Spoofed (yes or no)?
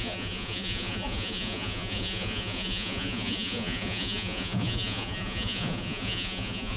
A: yes